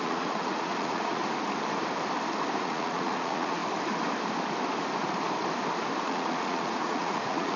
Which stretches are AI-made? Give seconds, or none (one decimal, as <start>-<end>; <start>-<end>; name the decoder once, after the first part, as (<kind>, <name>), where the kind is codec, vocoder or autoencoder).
0.0-1.2 (vocoder, Vocos); 2.6-3.6; 6.0-7.6